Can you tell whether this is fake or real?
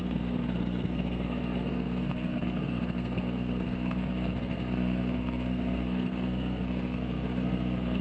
fake